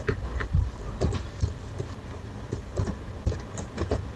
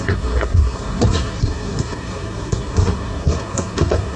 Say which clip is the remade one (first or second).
second